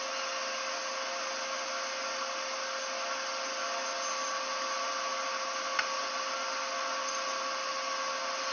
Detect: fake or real real